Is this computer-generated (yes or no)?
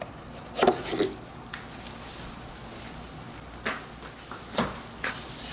no